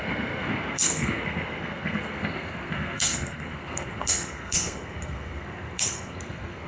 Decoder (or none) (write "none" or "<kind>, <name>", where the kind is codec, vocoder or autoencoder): codec, SNAC